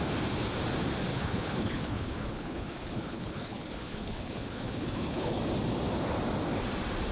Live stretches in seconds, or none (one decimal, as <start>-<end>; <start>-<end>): 0.0-1.1; 5.4-7.1